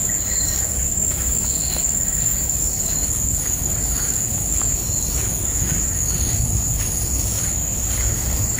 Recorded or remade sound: remade